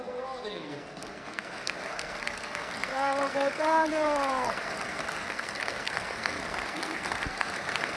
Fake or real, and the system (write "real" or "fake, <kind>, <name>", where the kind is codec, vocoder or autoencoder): fake, codec, SNAC